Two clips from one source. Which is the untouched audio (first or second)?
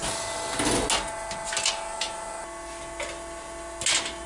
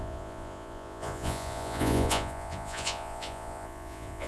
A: first